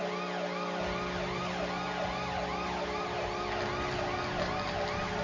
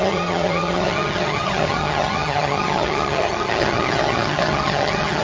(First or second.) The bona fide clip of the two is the first